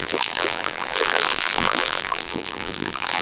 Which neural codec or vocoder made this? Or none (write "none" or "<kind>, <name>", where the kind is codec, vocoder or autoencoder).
vocoder, BigVGAN v2